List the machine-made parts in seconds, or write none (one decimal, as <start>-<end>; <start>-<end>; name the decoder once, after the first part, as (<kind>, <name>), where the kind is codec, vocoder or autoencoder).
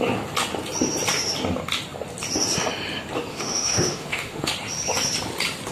3.3-4.5 (autoencoder, DAC-VAE)